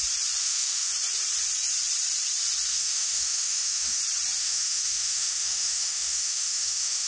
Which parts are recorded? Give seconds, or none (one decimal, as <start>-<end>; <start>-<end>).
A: 0.0-0.4; 0.9-2.7; 4.0-4.4